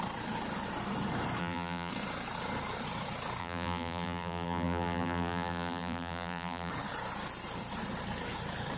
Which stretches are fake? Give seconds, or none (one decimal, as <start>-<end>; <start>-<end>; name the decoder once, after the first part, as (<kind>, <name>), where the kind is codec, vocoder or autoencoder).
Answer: 1.4-1.9 (vocoder, BigVGAN v2); 3.4-6.7

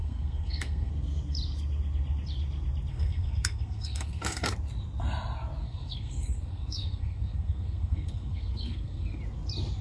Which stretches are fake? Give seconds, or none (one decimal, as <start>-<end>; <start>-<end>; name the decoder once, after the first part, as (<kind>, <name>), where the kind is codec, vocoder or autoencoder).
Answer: 0.0-0.9 (codec, SNAC); 2.9-4.5; 5.6-9.2

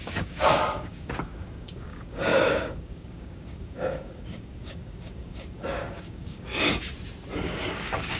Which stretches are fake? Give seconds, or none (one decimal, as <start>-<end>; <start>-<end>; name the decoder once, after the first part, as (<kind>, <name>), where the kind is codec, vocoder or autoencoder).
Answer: 0.0-6.8 (codec, DAC); 7.4-8.2

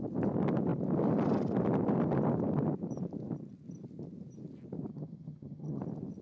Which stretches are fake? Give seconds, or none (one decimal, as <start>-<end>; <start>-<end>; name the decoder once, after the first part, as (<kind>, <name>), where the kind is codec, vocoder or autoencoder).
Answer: 4.9-5.8 (vocoder, HiFi-GAN)

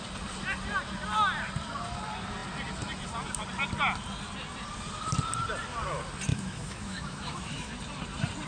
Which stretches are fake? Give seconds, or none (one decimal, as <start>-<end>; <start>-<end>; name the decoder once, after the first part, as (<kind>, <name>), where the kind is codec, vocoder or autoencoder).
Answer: 6.3-7.7 (autoencoder, DAC-VAE)

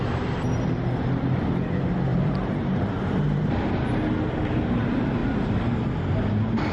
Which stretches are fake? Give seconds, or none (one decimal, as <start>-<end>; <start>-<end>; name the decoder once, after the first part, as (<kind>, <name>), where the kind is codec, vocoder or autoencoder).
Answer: 2.1-3.5 (vocoder, BigVGAN v2)

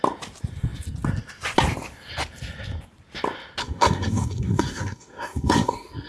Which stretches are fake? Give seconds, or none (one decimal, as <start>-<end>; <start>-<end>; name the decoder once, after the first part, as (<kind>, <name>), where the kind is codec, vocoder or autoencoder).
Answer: 3.6-6.1 (codec, SNAC)

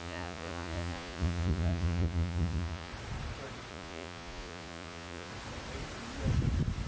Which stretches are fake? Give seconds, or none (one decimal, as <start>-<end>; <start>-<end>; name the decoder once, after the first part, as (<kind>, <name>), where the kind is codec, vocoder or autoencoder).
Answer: 0.0-2.9 (vocoder, Vocos); 3.7-5.3